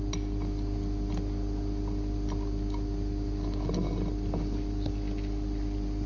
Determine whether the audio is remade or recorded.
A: recorded